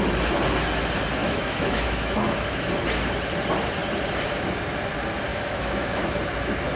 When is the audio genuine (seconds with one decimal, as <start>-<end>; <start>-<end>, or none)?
0.0-1.2; 2.7-5.3; 6.2-6.8